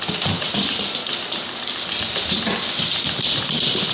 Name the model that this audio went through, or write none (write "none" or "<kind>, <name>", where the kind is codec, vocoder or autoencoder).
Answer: none